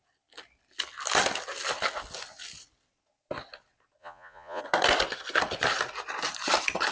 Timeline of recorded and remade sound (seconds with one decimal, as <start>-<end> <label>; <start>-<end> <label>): 0.0-4.0 recorded; 4.0-4.6 remade; 4.6-6.9 recorded